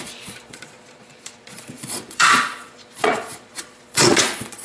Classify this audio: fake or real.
fake